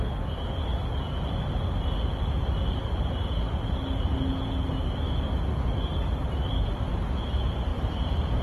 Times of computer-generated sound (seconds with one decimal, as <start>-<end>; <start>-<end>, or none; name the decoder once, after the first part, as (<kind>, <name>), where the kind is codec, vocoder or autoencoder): 7.7-8.4 (vocoder, BigVGAN v2)